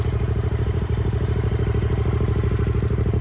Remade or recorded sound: remade